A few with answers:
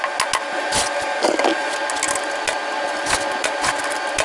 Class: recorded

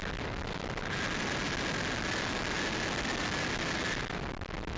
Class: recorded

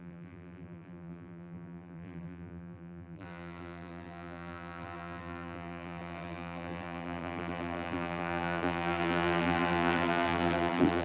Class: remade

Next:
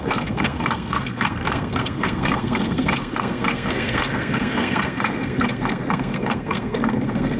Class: remade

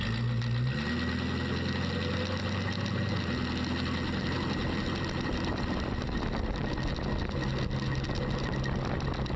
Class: recorded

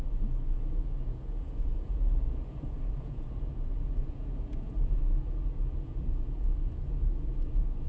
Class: remade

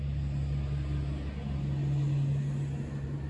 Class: recorded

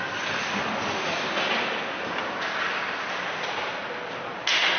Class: recorded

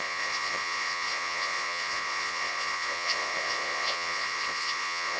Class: remade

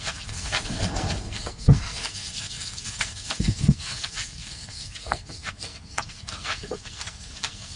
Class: remade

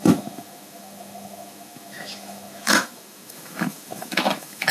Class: remade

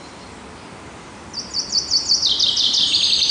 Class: recorded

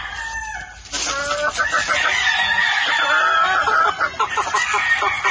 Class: recorded